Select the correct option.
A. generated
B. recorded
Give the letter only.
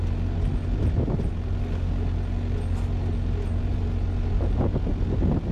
B